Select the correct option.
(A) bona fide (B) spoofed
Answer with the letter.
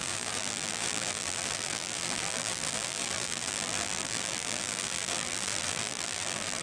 B